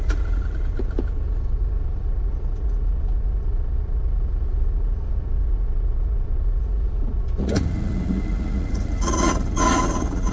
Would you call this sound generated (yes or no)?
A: yes